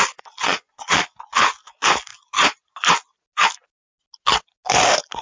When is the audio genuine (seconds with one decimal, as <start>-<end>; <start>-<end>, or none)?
0.0-0.4; 1.1-5.2